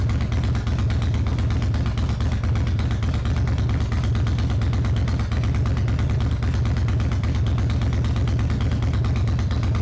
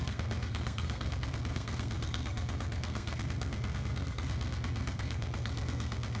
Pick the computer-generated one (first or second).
second